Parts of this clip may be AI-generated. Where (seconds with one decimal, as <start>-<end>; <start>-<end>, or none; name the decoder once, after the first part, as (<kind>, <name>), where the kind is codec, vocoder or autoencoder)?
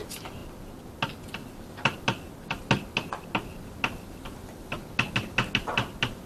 none